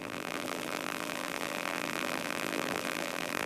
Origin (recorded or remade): remade